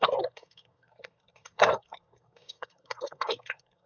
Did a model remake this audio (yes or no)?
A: yes